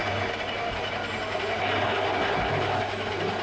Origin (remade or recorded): recorded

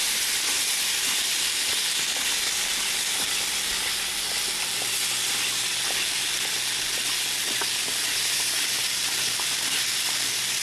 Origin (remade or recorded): recorded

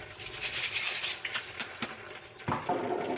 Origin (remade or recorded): remade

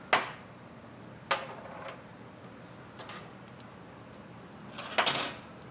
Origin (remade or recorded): recorded